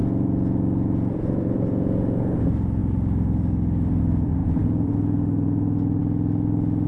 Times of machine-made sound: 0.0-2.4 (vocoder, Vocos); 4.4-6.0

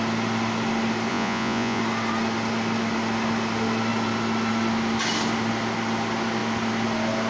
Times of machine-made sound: 1.1-1.8 (vocoder, Vocos)

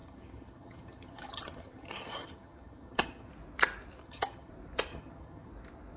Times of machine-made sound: 0.0-3.3 (vocoder, HiFi-GAN); 4.0-4.5; 4.9-5.5

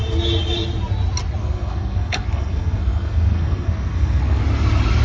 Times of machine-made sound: 1.4-4.4 (codec, SNAC)

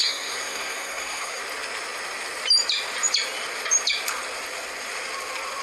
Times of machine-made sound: 0.0-1.4 (codec, SNAC)